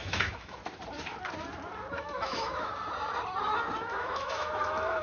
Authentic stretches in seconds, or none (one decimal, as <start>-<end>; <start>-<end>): 0.6-1.9; 2.7-3.8